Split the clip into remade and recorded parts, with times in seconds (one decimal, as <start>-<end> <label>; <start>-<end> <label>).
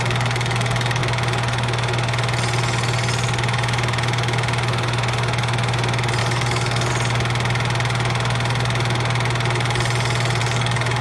0.0-1.0 remade; 1.0-6.2 recorded; 6.2-6.9 remade; 6.9-10.4 recorded; 10.4-11.0 remade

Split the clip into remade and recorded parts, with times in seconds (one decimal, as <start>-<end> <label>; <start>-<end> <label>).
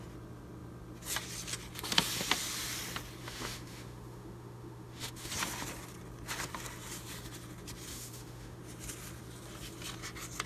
0.0-3.2 recorded; 3.2-5.3 remade; 5.3-7.9 recorded; 7.9-8.6 remade; 8.6-10.5 recorded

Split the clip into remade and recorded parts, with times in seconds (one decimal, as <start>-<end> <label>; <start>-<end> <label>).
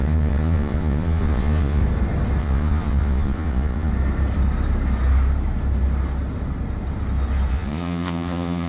0.0-1.8 remade; 1.8-2.4 recorded; 2.4-3.9 remade; 3.9-7.5 recorded; 7.5-8.7 remade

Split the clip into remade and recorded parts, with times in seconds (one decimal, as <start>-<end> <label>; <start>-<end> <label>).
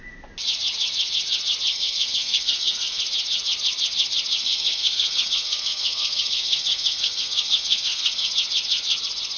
0.0-1.7 recorded; 1.7-3.0 remade; 3.0-4.4 recorded; 4.4-8.3 remade; 8.3-9.4 recorded